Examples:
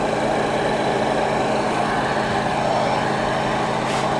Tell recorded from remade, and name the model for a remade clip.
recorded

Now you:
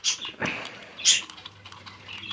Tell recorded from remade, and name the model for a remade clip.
recorded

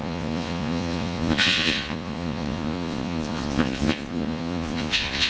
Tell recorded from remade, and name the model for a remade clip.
remade, vocoder, Vocos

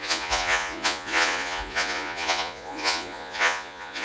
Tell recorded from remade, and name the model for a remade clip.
remade, vocoder, Vocos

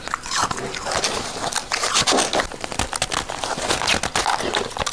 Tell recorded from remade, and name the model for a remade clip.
recorded